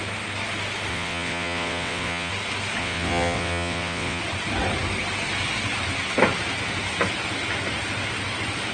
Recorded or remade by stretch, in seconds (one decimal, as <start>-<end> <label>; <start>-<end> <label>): 0.0-0.9 recorded; 0.9-2.3 remade; 2.3-2.8 recorded; 2.8-4.2 remade; 4.2-8.7 recorded